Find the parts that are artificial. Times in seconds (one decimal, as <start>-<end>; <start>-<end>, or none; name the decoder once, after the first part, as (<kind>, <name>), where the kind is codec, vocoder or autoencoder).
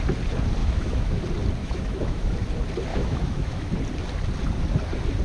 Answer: 0.6-1.2 (autoencoder, DAC-VAE); 1.6-2.3; 2.9-3.7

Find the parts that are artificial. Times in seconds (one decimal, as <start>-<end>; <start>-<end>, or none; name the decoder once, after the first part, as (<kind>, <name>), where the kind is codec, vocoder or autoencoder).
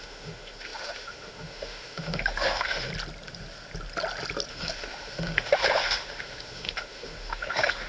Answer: 0.0-2.9 (autoencoder, DAC-VAE); 4.5-7.9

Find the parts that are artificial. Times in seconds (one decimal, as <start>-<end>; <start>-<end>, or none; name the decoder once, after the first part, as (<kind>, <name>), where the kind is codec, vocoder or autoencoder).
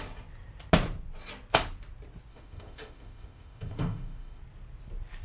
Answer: 2.3-4.4 (autoencoder, DAC-VAE)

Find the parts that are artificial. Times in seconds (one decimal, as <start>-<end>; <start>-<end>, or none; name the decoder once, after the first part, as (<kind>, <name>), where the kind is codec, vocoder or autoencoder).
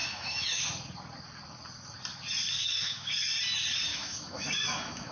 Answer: 0.0-0.6 (autoencoder, DAC-VAE); 2.6-3.1; 3.9-5.1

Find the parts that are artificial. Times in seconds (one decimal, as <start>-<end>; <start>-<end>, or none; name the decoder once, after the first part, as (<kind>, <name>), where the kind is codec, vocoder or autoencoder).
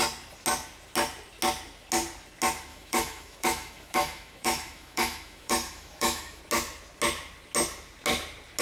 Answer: 2.7-6.4 (autoencoder, DAC-VAE)